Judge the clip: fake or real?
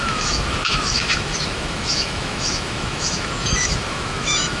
fake